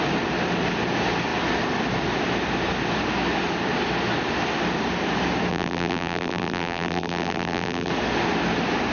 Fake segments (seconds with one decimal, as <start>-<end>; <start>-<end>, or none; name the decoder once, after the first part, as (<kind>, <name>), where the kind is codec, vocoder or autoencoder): 5.5-7.9 (vocoder, BigVGAN v2)